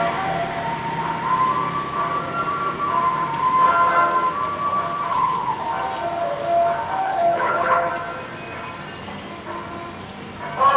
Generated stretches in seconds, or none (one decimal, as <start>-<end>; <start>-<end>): 5.1-5.6; 7.0-7.9